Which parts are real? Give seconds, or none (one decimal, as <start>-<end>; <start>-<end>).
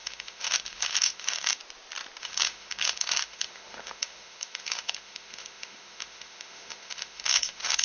1.6-2.2